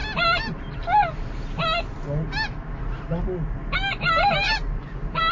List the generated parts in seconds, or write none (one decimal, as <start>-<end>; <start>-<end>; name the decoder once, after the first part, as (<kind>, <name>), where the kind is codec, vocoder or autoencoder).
none